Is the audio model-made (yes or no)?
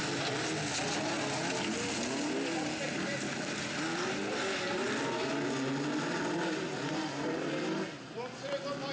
no